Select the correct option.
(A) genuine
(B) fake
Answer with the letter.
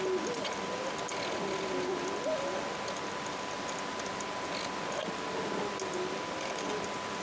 A